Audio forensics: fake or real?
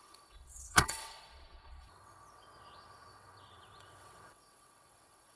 fake